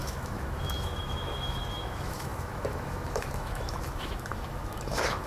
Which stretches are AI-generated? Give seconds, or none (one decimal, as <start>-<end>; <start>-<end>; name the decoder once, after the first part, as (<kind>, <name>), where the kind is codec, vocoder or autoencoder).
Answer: 0.0-5.3 (autoencoder, DAC-VAE)